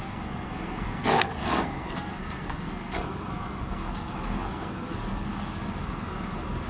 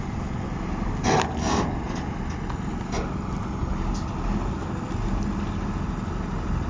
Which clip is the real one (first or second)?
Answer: second